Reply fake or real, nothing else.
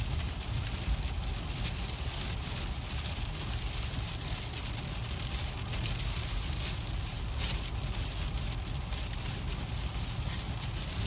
real